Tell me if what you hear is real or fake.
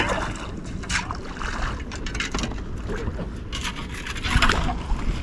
real